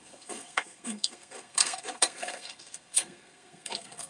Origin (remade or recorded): remade